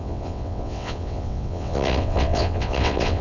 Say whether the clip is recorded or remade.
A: remade